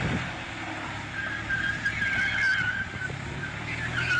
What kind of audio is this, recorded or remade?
recorded